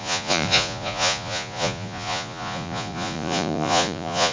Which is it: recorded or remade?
remade